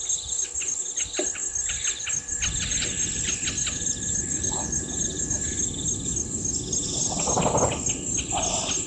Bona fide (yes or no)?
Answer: yes